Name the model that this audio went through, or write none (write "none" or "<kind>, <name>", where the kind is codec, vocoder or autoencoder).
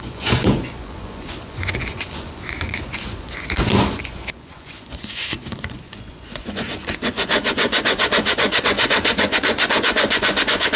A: vocoder, Vocos